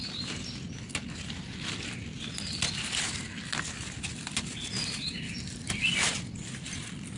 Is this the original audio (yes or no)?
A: yes